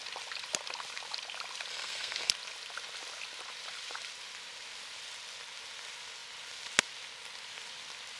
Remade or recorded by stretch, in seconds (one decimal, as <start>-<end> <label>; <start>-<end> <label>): 0.0-1.7 recorded; 1.7-2.3 remade; 2.3-8.2 recorded